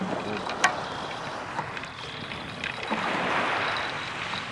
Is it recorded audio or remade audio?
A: recorded